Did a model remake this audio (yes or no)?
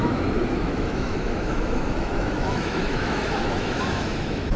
yes